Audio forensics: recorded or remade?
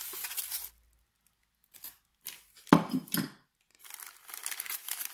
recorded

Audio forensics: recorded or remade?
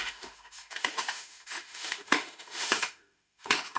remade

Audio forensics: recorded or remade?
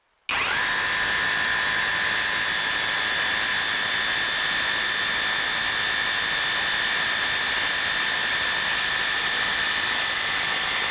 recorded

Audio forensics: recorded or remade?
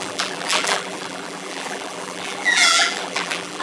remade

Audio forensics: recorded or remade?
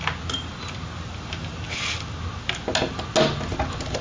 recorded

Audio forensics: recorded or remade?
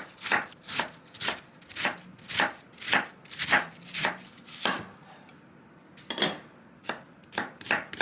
recorded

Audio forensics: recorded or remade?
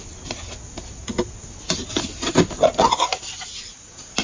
recorded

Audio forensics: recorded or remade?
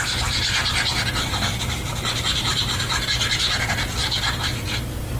recorded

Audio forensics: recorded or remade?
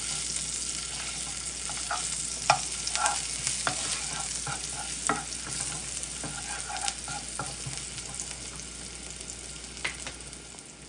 recorded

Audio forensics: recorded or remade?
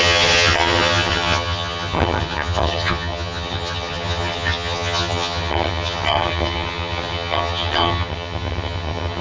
remade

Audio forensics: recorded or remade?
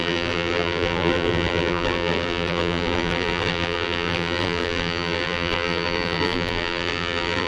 remade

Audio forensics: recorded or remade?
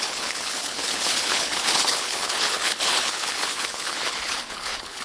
remade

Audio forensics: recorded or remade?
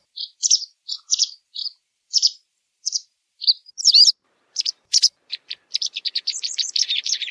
remade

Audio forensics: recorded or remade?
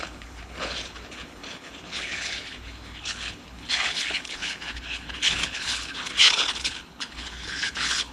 remade